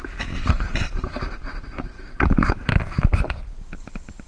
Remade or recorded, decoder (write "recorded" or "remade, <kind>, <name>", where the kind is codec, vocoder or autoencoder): remade, vocoder, BigVGAN v2